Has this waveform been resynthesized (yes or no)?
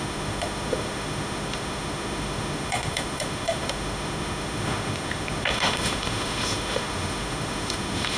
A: yes